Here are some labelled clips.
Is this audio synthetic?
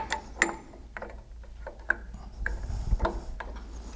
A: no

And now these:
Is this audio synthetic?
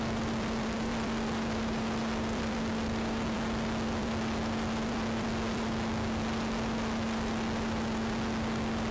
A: yes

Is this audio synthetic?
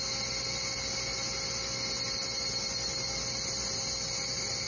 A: no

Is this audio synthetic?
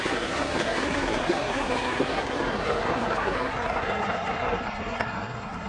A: yes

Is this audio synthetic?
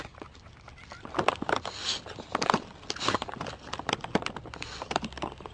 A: no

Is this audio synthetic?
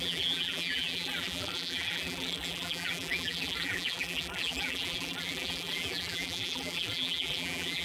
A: yes